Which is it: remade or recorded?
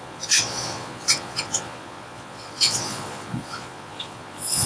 remade